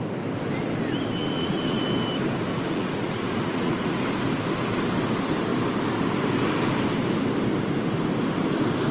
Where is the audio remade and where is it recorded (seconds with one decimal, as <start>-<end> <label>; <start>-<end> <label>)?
0.0-1.2 recorded; 1.2-1.8 remade; 1.8-2.5 recorded; 2.5-4.0 remade; 4.0-8.9 recorded